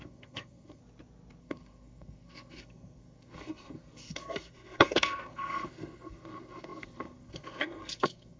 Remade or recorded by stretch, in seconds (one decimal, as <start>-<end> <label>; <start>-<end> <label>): 0.0-0.8 remade; 0.8-1.4 recorded; 1.4-8.4 remade